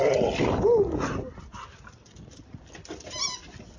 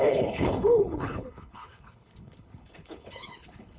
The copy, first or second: second